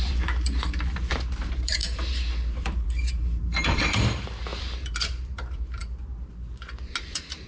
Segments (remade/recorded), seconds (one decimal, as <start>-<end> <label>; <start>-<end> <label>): 0.0-5.8 remade; 5.8-7.0 recorded; 7.0-7.5 remade